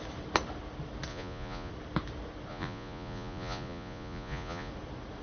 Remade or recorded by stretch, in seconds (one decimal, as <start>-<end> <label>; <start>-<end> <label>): 0.0-1.1 recorded; 1.1-1.7 remade; 1.7-2.5 recorded; 2.5-4.7 remade; 4.7-5.2 recorded